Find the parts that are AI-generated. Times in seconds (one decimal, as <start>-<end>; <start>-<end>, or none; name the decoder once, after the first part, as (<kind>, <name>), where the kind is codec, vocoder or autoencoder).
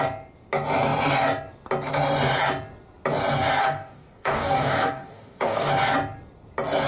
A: 3.6-5.7 (codec, DAC)